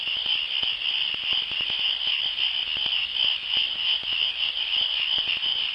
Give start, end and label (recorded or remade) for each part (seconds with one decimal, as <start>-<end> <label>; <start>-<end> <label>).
0.0-5.7 recorded